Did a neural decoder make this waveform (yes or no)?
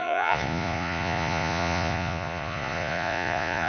yes